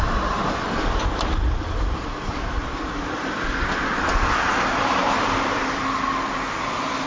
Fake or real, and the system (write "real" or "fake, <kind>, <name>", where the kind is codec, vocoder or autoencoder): real